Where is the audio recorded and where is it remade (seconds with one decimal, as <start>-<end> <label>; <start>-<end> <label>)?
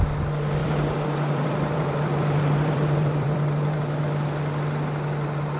0.0-0.6 recorded; 0.6-4.0 remade; 4.0-5.6 recorded